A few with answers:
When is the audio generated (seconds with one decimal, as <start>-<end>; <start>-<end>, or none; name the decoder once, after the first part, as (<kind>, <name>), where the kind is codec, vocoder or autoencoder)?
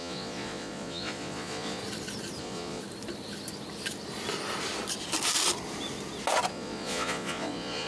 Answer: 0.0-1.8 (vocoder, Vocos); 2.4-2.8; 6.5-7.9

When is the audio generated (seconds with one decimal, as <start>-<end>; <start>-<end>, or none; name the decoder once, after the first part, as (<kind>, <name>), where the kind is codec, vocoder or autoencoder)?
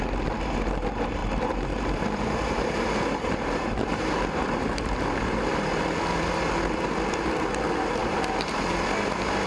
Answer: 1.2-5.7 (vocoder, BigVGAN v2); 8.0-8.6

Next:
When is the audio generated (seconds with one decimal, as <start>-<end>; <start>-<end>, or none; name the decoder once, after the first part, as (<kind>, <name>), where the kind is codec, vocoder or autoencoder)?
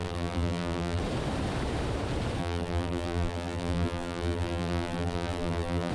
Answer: 0.0-1.0 (vocoder, BigVGAN v2); 2.4-5.9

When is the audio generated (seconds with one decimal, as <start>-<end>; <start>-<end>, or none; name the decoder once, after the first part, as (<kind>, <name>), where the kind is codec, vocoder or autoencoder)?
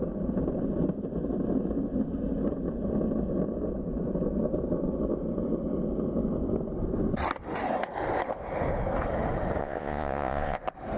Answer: 9.6-10.6 (vocoder, Vocos)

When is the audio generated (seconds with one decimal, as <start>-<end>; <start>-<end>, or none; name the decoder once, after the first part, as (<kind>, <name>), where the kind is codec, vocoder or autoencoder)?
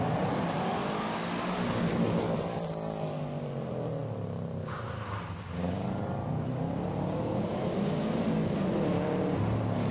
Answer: none